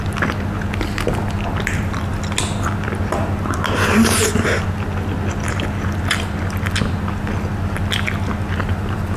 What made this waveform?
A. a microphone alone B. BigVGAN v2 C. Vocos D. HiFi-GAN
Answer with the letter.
A